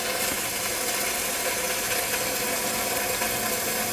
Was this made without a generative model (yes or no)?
yes